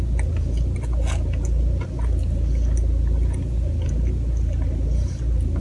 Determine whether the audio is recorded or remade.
recorded